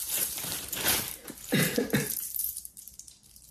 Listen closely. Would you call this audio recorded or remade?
remade